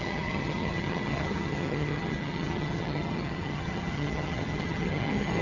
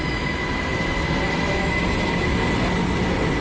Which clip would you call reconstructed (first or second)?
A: first